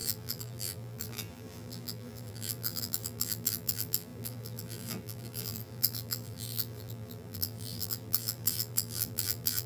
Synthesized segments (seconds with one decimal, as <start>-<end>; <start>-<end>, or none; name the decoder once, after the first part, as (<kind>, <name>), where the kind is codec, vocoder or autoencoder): 0.0-9.7 (vocoder, BigVGAN v2)